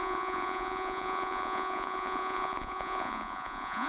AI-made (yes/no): yes